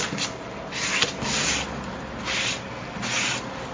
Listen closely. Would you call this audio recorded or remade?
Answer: recorded